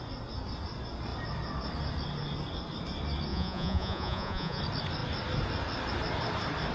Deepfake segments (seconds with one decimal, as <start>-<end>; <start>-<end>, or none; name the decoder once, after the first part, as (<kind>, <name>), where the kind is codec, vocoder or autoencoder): 3.3-4.6 (vocoder, Vocos)